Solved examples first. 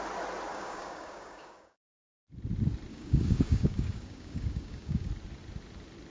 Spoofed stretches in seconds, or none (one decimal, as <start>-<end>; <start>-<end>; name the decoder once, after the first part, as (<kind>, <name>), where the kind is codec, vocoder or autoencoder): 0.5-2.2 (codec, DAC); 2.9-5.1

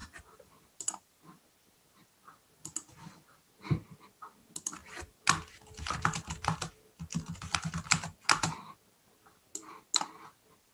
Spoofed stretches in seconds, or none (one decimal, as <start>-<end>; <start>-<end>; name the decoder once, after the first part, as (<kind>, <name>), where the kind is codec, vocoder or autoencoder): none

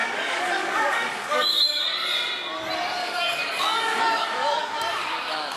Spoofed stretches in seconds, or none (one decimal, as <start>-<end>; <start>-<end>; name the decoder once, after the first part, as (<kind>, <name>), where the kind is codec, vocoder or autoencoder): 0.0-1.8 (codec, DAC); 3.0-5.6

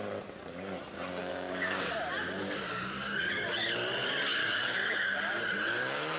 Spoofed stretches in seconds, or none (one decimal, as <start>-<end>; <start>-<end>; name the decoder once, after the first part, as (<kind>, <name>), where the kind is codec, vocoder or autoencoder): 1.3-1.9 (codec, DAC); 4.4-5.4